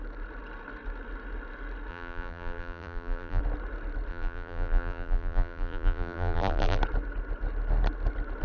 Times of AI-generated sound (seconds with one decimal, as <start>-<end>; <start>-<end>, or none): 1.9-3.4; 4.1-6.8